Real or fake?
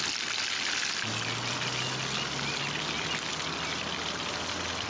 real